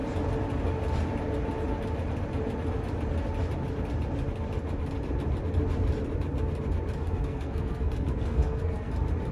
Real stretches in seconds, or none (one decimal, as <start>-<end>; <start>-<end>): 0.0-7.0; 8.9-9.3